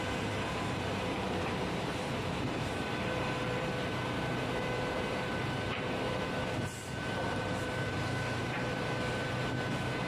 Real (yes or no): no